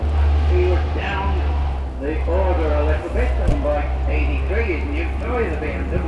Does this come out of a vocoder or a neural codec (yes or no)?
no